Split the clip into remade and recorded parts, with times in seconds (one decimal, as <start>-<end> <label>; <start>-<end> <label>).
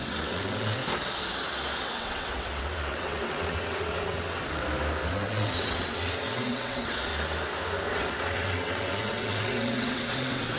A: 0.0-0.8 remade; 0.8-1.8 recorded; 1.8-4.6 remade; 4.6-5.1 recorded; 5.1-7.1 remade; 7.1-7.9 recorded; 7.9-10.6 remade